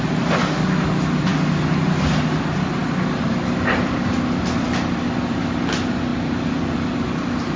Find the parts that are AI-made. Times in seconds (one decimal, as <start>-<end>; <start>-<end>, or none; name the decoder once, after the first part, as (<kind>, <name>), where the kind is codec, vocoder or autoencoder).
none